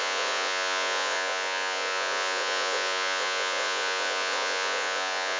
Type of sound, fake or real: fake